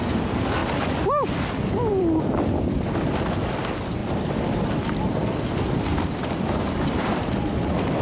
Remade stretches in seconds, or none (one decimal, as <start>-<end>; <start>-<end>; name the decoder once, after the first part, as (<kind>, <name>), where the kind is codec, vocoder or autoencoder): 0.6-2.2 (vocoder, BigVGAN v2); 5.9-8.0